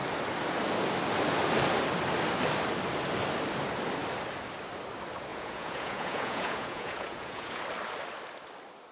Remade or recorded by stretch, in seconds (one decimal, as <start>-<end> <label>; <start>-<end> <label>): 0.0-5.3 recorded; 5.3-7.6 remade; 7.6-8.9 recorded